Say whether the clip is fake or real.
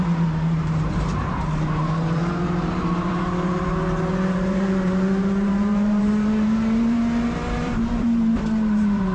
fake